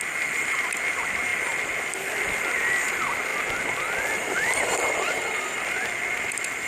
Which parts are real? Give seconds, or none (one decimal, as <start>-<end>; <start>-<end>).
0.0-6.7